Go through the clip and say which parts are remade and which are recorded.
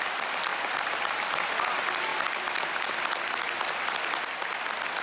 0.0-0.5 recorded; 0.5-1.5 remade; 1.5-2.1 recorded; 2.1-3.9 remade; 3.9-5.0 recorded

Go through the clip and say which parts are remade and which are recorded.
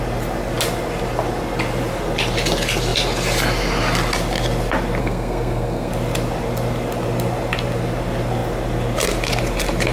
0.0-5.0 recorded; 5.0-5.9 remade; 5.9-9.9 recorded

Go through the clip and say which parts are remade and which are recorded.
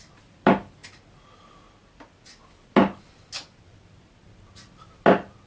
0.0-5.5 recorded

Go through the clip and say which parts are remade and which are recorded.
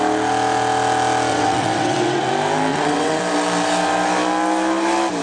0.0-1.3 recorded; 1.3-2.3 remade; 2.3-2.7 recorded; 2.7-3.2 remade; 3.2-5.2 recorded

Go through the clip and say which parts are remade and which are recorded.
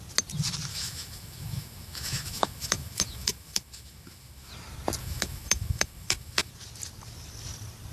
0.0-0.7 recorded; 0.7-4.5 remade; 4.5-5.0 recorded; 5.0-6.5 remade; 6.5-7.9 recorded